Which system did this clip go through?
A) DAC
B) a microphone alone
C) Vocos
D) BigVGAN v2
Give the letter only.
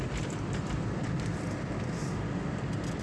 B